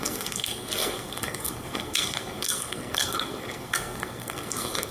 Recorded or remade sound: remade